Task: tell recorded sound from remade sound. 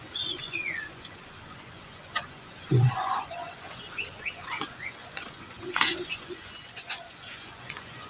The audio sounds remade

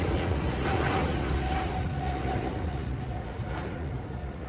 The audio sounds remade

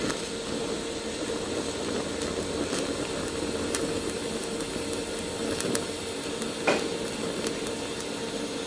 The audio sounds recorded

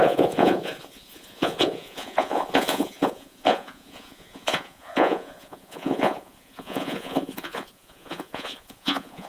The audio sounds remade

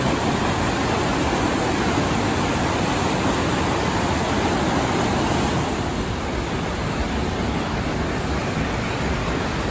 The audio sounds recorded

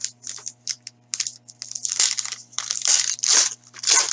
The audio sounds recorded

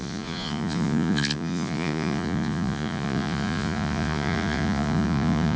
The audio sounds remade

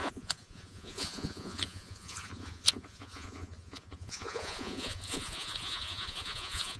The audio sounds remade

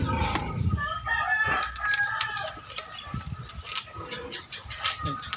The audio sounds recorded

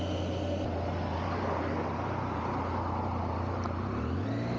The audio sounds recorded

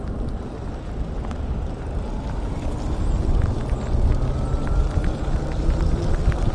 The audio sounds recorded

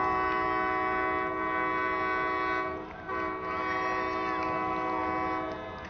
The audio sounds recorded